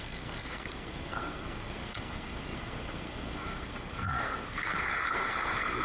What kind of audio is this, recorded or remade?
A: remade